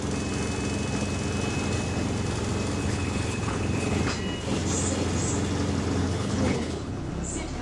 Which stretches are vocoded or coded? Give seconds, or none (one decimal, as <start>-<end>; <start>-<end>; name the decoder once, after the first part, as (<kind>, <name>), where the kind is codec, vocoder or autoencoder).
2.8-4.0 (codec, HILCodec); 6.0-7.1